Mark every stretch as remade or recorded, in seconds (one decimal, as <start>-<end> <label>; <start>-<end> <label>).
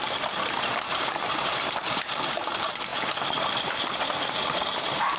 0.0-2.9 remade; 2.9-3.6 recorded; 3.6-5.2 remade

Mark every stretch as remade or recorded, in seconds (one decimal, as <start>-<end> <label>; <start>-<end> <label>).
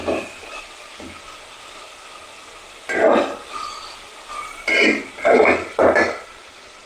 0.0-6.9 recorded